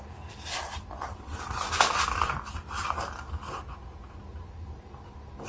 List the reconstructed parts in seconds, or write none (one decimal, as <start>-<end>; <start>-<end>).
0.0-1.3; 4.2-5.5